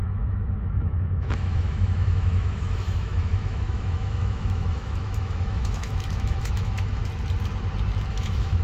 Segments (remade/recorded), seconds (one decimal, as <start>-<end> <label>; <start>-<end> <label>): 0.0-7.0 remade; 7.0-8.1 recorded; 8.1-8.6 remade